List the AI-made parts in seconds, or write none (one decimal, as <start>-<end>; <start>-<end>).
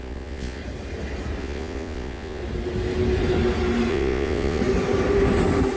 0.0-0.6; 1.4-2.4; 3.9-4.6